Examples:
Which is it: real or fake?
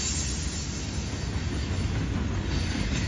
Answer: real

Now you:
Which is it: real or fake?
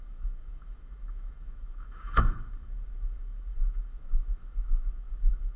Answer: fake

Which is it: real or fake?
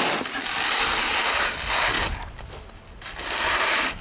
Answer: real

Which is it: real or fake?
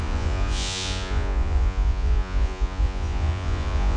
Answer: fake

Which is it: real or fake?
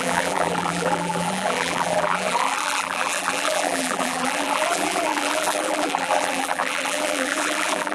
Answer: fake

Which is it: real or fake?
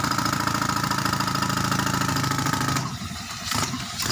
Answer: real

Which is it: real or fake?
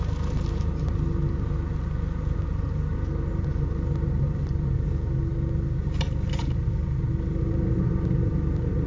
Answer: real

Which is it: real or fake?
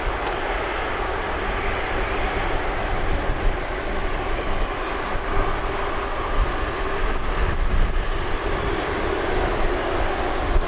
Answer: real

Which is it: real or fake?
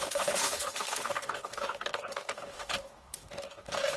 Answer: fake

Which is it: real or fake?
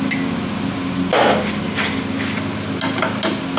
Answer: real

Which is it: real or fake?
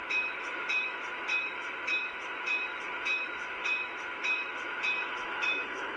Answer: fake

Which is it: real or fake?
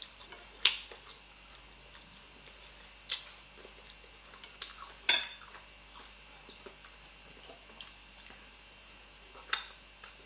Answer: real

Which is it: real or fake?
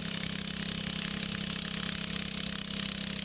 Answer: real